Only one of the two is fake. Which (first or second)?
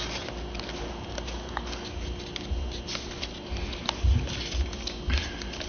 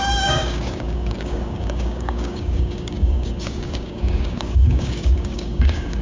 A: second